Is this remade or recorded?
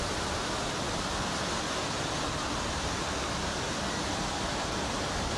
recorded